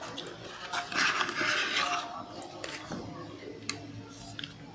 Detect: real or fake real